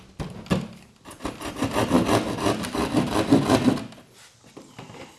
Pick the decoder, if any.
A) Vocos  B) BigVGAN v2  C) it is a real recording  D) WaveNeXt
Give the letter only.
C